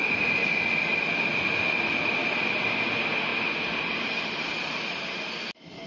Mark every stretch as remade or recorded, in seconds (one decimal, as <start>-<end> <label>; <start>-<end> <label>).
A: 0.0-2.2 recorded; 2.2-2.7 remade; 2.7-3.3 recorded; 3.3-5.0 remade; 5.0-5.9 recorded